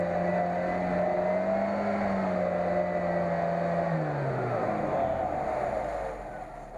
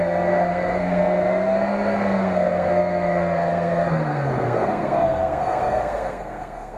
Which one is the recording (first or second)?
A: first